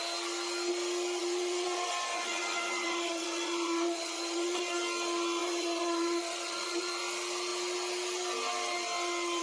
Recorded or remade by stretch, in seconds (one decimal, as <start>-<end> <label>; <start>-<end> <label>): 0.0-1.2 recorded; 1.2-4.7 remade; 4.7-5.4 recorded; 5.4-7.0 remade; 7.0-9.4 recorded